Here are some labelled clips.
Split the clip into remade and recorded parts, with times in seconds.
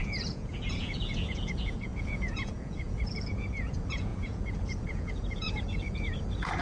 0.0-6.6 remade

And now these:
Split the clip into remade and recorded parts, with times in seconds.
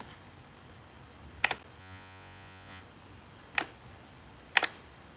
0.0-1.8 recorded; 1.8-2.8 remade; 2.8-5.2 recorded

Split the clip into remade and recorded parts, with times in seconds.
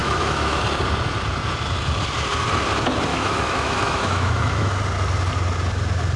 0.0-0.6 remade; 0.6-3.1 recorded; 3.1-4.7 remade; 4.7-6.2 recorded